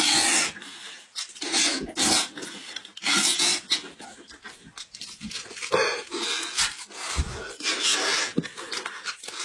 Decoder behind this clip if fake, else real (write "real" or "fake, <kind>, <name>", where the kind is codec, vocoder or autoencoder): real